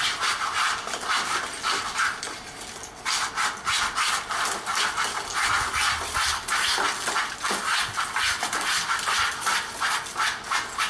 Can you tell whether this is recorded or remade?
recorded